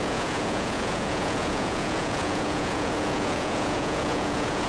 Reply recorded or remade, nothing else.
remade